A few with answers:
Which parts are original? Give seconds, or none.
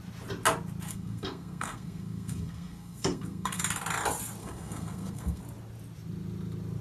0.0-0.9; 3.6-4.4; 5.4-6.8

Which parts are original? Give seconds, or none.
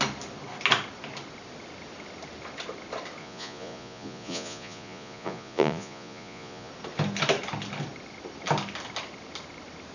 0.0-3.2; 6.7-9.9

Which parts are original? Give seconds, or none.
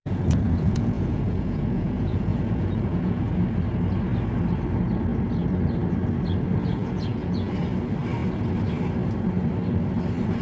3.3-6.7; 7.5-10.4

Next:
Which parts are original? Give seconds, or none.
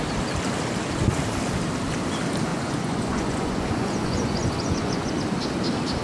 0.0-2.5; 5.1-6.0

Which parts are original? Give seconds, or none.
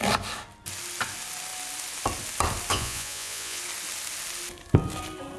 0.0-2.7; 3.6-5.4